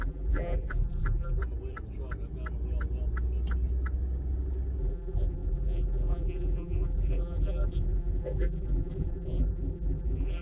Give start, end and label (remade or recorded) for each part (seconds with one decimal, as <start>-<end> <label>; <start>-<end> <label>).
0.0-1.4 remade; 1.4-4.8 recorded; 4.8-10.4 remade